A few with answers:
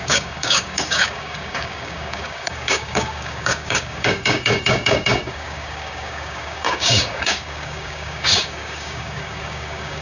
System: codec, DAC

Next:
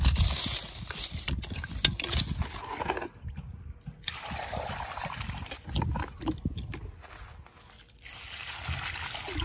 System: none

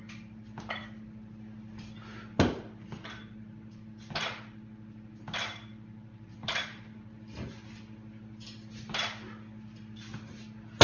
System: none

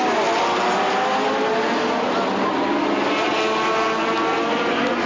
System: none